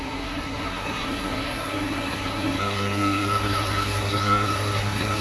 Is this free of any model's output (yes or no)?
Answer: no